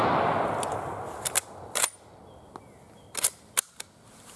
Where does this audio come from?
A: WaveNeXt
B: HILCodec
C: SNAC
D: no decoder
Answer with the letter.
D